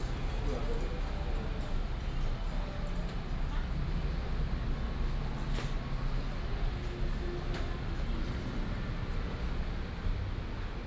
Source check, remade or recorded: recorded